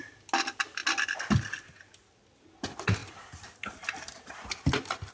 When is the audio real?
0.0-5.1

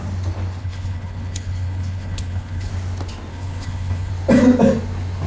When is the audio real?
0.0-0.6; 2.7-3.3; 4.1-5.3

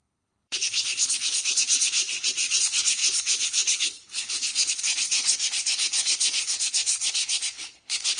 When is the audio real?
2.0-2.6

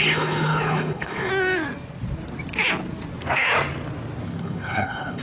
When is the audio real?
1.3-4.4

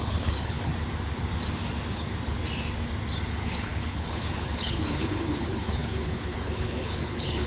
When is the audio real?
0.7-3.3

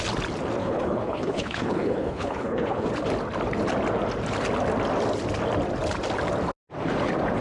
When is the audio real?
0.0-0.6; 2.9-7.4